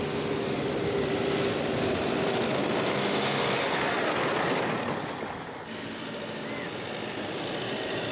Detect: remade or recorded recorded